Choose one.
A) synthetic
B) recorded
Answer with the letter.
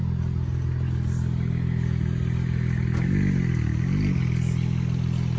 B